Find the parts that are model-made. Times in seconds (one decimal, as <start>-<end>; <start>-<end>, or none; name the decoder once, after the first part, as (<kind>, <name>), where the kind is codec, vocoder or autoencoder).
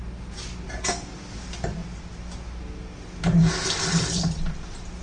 none